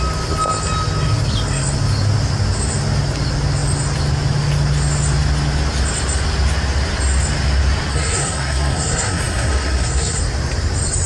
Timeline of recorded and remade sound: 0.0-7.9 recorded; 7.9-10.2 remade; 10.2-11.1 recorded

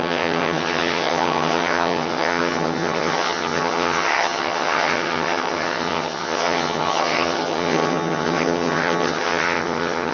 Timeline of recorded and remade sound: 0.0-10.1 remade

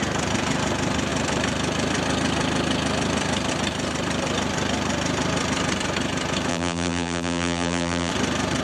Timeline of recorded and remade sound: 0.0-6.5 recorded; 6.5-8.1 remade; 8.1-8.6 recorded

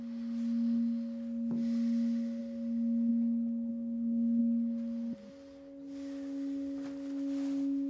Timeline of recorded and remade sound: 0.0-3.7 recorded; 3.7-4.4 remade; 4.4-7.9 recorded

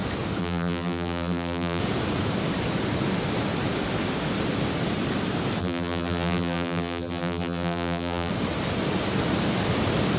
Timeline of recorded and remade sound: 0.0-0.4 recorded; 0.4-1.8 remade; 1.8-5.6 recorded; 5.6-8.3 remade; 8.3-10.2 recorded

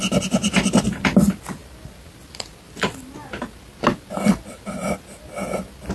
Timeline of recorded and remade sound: 0.0-5.9 recorded

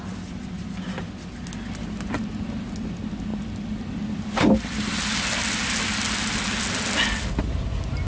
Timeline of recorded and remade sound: 0.0-8.1 recorded